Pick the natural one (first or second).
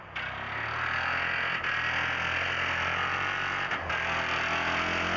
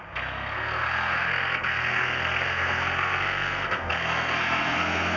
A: first